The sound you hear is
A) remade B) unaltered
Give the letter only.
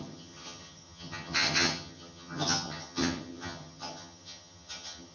A